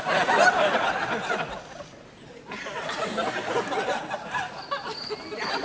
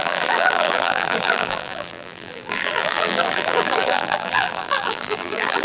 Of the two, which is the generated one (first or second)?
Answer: second